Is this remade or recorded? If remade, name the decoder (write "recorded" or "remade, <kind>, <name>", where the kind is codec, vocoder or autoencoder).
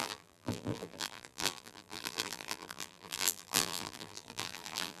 remade, vocoder, BigVGAN v2